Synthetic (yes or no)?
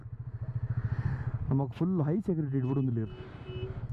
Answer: no